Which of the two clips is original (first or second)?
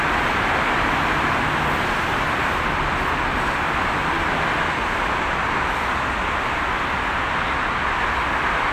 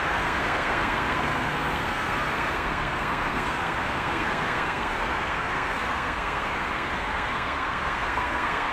first